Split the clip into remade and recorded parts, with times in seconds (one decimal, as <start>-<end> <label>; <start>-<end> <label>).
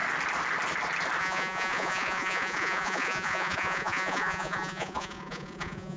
0.0-1.2 recorded; 1.2-6.0 remade